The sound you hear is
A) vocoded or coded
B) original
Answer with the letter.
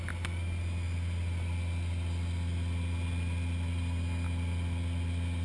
B